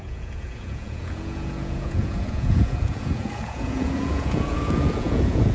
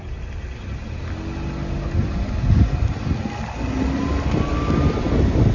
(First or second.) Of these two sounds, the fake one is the first